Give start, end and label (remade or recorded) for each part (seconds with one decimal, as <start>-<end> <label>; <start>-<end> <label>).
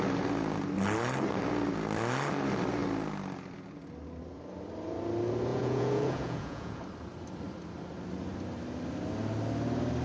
0.0-5.5 recorded; 5.5-6.8 remade; 6.8-10.0 recorded